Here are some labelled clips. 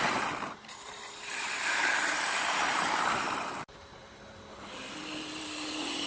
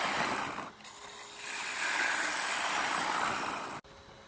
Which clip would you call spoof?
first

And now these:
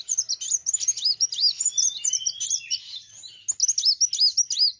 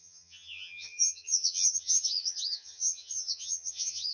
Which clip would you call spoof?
second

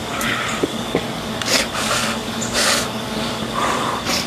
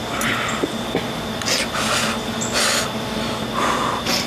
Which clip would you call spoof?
first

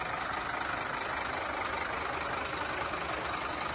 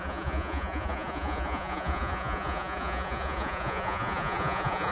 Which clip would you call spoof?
second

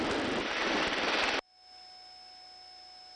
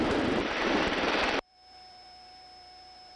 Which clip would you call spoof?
second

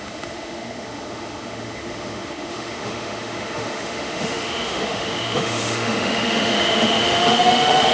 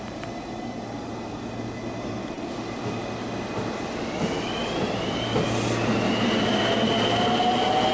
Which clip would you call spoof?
first